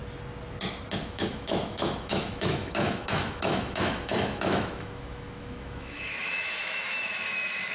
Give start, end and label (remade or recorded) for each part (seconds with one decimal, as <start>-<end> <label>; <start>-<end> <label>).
0.0-1.0 recorded; 1.0-7.7 remade